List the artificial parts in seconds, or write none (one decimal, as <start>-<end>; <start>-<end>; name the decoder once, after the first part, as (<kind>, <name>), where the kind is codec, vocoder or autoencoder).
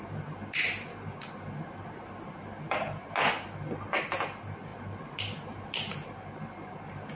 none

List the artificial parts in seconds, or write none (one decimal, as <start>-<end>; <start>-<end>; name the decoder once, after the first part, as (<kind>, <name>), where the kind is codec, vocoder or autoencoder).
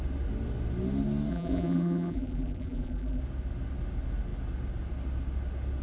1.3-3.2 (vocoder, BigVGAN v2)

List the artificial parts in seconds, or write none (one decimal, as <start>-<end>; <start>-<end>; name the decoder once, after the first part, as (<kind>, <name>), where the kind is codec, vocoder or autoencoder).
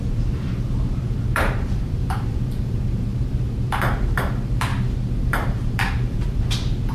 0.0-3.1 (vocoder, BigVGAN v2); 3.7-4.7; 5.3-6.9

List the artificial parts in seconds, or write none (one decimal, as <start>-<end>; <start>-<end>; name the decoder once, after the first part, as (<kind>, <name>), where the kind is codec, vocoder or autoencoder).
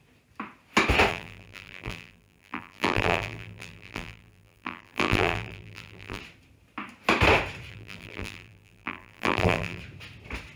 1.1-6.2 (vocoder, BigVGAN v2); 7.7-9.8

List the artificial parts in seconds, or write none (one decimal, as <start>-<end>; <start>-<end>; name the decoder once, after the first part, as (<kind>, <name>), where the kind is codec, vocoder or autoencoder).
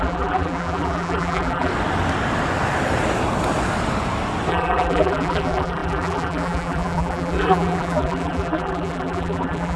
0.0-1.7 (vocoder, BigVGAN v2); 4.5-9.8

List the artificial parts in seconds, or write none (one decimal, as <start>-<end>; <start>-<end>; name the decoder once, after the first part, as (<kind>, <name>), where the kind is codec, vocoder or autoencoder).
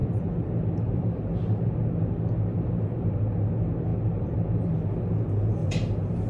0.0-1.7 (vocoder, BigVGAN v2); 3.9-4.8; 5.6-6.3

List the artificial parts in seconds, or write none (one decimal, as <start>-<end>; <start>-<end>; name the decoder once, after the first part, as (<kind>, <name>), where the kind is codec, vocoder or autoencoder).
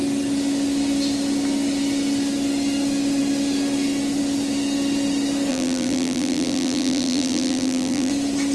5.5-8.1 (vocoder, BigVGAN v2)